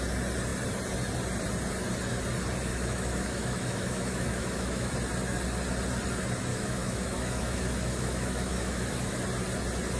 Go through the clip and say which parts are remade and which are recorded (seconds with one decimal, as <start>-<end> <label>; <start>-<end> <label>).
0.0-2.7 recorded; 2.7-4.9 remade; 4.9-6.5 recorded; 6.5-9.2 remade; 9.2-10.0 recorded